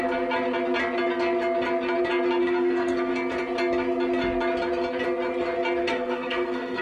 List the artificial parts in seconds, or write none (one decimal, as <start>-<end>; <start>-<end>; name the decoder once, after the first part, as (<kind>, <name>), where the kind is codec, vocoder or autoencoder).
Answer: 2.4-3.1 (codec, SNAC); 5.8-6.8